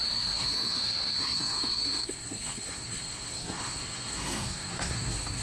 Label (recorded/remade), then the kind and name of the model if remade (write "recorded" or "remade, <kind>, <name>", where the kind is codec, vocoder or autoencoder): remade, codec, SNAC